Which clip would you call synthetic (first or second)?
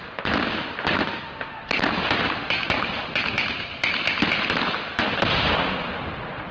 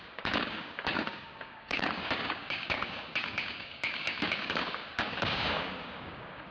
second